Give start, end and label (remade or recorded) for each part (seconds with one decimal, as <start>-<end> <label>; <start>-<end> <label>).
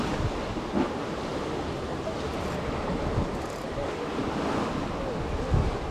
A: 0.0-5.9 recorded